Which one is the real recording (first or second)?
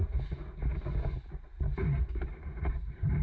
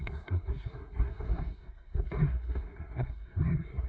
first